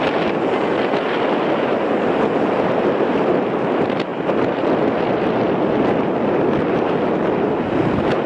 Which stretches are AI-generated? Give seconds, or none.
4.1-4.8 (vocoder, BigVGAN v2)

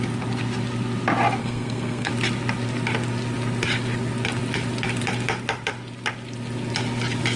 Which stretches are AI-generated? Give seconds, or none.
1.4-2.1 (codec, SNAC)